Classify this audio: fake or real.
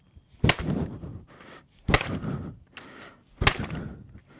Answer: real